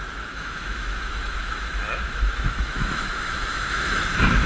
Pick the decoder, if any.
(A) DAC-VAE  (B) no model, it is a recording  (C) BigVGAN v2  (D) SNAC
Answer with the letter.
A